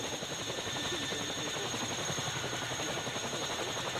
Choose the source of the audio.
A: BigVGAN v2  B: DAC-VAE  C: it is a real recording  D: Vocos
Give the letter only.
C